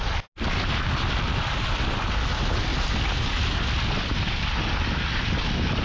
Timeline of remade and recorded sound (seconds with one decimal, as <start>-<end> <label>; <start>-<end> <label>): 0.0-5.8 recorded